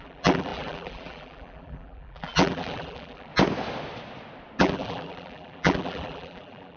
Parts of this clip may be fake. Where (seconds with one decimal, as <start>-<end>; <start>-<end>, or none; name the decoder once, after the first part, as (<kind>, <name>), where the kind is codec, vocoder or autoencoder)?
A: 0.0-3.3 (vocoder, BigVGAN v2); 4.6-6.8